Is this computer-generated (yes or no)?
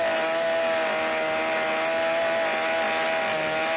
no